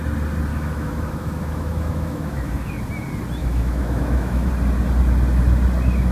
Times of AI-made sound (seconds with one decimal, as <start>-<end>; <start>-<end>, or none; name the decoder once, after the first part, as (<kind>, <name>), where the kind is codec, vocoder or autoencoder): 0.5-2.7 (autoencoder, DAC-VAE); 3.4-4.5